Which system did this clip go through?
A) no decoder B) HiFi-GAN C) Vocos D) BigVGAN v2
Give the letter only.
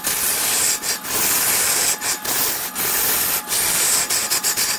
A